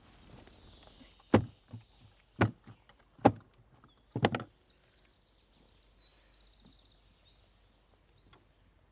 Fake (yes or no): no